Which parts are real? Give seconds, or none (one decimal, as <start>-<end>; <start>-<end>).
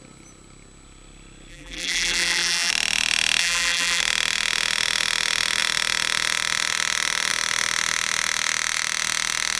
0.0-1.5; 2.7-3.4; 4.0-9.6